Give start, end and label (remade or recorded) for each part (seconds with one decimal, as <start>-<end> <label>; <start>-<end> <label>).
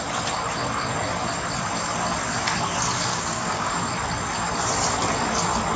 0.0-3.1 recorded; 3.1-3.7 remade; 3.7-5.8 recorded